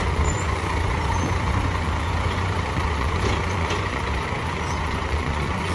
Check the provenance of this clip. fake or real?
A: fake